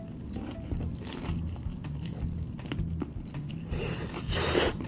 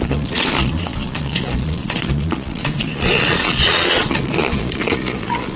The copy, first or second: second